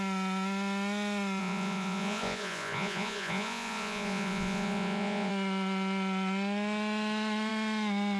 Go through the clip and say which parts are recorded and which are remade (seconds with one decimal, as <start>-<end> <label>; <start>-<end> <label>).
0.0-1.4 recorded; 1.4-5.3 remade; 5.3-8.2 recorded